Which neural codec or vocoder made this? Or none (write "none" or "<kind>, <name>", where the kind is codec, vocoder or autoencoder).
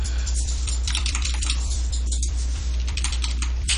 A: vocoder, BigVGAN v2